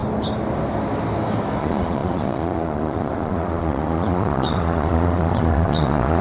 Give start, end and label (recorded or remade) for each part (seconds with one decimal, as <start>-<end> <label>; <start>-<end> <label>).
0.0-1.6 recorded; 1.6-6.2 remade